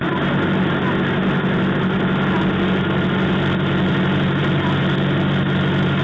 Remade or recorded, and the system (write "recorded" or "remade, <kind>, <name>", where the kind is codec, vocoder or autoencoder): recorded